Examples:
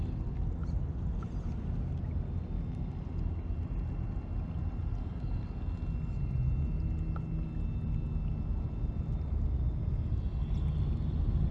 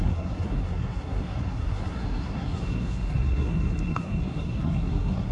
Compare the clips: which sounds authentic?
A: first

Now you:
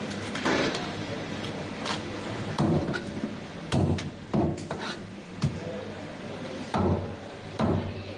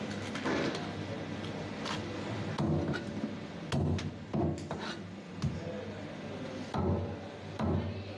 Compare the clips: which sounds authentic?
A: second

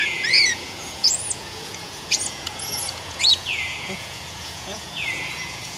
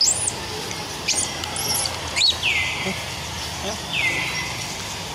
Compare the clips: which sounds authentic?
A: second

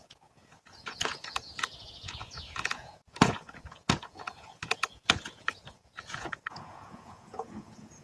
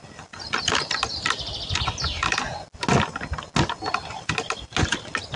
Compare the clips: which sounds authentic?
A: second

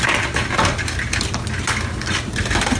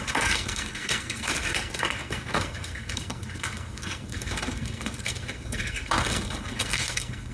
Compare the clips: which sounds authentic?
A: first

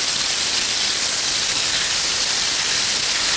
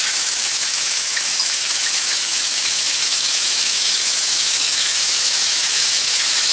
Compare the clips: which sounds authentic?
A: first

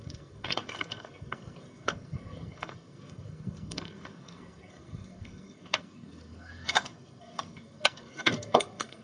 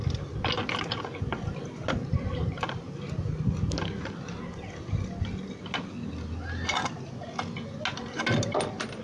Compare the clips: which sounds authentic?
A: second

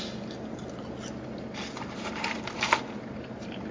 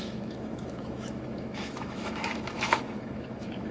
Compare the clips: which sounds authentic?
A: first